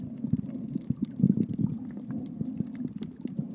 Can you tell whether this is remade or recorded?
recorded